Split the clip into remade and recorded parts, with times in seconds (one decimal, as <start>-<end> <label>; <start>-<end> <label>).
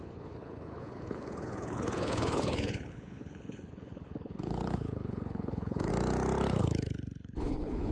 0.0-5.9 remade; 5.9-6.6 recorded; 6.6-7.9 remade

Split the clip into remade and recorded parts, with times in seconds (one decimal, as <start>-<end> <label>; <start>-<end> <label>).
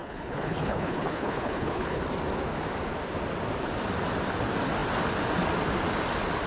0.0-2.0 remade; 2.0-6.5 recorded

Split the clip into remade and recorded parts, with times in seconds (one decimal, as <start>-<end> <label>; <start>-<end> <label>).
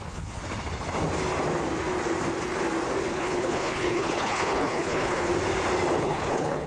0.0-0.4 remade; 0.4-3.1 recorded; 3.1-5.3 remade; 5.3-6.0 recorded; 6.0-6.7 remade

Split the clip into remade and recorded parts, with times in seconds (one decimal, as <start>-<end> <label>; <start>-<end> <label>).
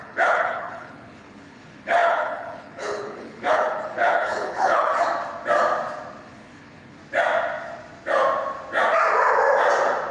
0.0-4.9 remade; 4.9-6.2 recorded; 6.2-7.0 remade; 7.0-10.1 recorded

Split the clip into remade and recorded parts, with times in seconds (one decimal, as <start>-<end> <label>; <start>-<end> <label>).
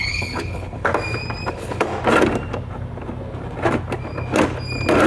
0.0-0.9 remade; 0.9-1.5 recorded; 1.5-1.9 remade; 1.9-5.1 recorded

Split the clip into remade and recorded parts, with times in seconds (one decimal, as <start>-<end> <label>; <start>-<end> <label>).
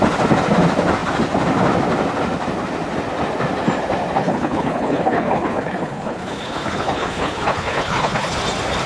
0.0-4.2 recorded; 4.2-8.4 remade; 8.4-8.9 recorded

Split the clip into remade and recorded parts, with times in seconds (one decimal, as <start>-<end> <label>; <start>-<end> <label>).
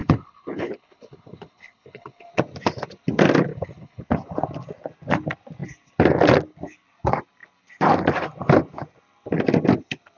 0.0-2.3 remade; 2.3-3.5 recorded; 3.5-4.0 remade; 4.0-10.2 recorded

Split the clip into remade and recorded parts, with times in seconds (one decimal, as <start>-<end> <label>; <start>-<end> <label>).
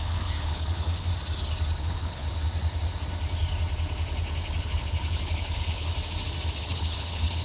0.0-1.1 remade; 1.1-1.8 recorded; 1.8-2.2 remade; 2.2-4.6 recorded; 4.6-5.9 remade; 5.9-6.6 recorded; 6.6-7.4 remade